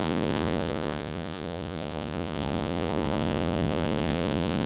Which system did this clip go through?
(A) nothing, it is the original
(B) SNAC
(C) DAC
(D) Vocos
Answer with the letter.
D